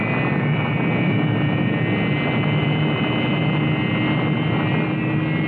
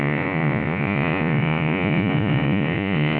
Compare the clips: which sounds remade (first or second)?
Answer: second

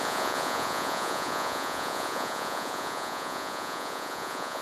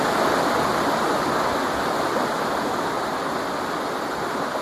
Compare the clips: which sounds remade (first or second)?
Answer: first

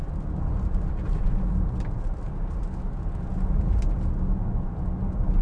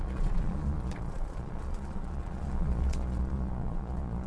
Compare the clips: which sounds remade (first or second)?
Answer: second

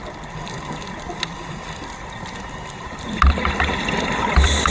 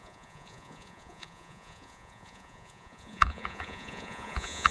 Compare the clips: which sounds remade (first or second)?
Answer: second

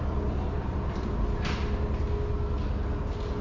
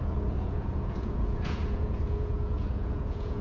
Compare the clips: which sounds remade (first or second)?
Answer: second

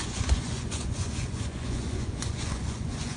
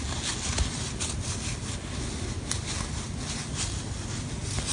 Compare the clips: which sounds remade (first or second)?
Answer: first